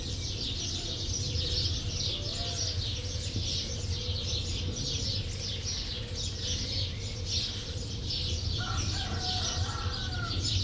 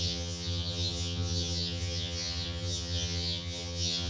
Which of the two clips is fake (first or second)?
second